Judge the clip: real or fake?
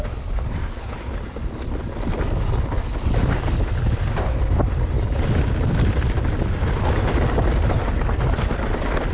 real